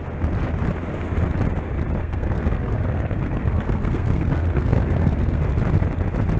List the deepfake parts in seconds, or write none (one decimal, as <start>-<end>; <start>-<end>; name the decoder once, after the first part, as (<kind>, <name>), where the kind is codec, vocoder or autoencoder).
2.0-5.4 (codec, SNAC)